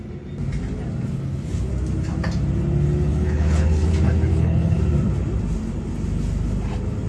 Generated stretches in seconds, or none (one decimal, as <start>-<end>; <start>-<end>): 1.1-1.7; 3.1-3.9; 4.3-4.8